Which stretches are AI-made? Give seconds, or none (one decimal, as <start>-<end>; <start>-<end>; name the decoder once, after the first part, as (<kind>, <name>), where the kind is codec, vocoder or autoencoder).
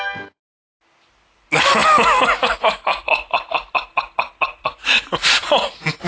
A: none